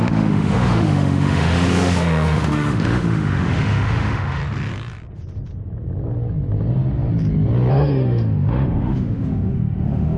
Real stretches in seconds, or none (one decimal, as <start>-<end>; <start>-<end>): 4.4-7.7